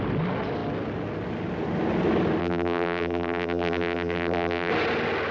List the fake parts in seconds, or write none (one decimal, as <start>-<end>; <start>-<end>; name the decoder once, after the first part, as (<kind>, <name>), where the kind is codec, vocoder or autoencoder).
2.4-4.7 (vocoder, BigVGAN v2)